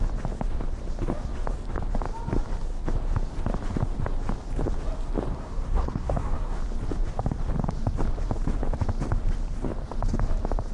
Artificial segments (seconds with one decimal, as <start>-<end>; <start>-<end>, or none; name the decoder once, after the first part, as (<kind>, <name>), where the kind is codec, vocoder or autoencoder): 5.3-6.6 (codec, SNAC)